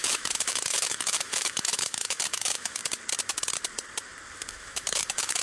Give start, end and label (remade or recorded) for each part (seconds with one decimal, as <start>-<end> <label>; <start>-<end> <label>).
0.0-2.8 remade; 2.8-4.5 recorded; 4.5-5.4 remade